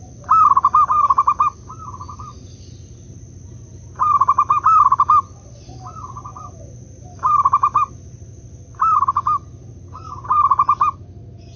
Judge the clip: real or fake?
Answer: real